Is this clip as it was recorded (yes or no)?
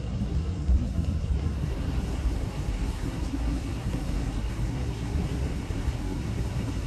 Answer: no